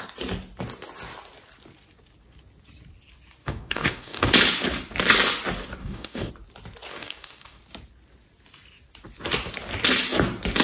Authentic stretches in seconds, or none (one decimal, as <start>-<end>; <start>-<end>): 0.0-3.4; 4.3-5.8; 6.3-6.9; 7.6-10.6